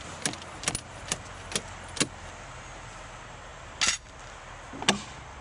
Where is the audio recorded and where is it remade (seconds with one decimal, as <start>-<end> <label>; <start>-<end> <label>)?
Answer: 0.0-5.4 recorded